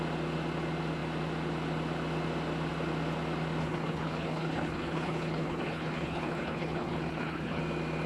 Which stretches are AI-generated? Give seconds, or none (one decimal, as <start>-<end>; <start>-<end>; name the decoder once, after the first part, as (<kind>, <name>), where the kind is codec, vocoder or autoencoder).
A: 3.6-7.6 (codec, HILCodec)